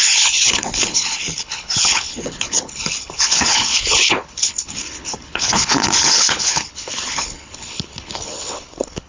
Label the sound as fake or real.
fake